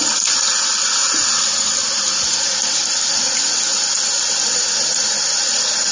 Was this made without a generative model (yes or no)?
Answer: yes